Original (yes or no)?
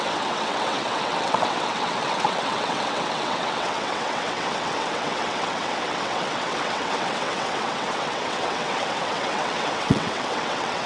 no